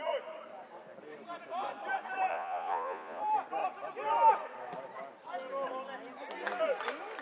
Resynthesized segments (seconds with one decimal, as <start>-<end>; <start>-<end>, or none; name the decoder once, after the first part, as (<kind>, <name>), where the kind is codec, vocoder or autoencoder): 2.3-3.2 (vocoder, Vocos)